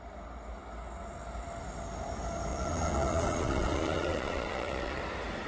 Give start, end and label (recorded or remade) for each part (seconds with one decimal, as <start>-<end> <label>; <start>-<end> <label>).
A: 0.0-2.5 recorded; 2.5-5.0 remade; 5.0-5.5 recorded